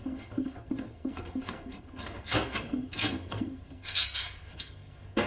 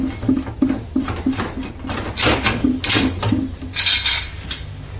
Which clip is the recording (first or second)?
second